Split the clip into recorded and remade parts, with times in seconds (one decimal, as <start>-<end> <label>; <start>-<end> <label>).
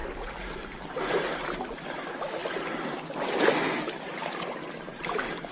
0.0-5.5 recorded